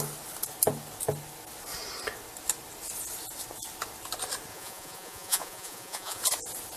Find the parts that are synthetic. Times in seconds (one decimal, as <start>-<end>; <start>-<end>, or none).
4.5-6.2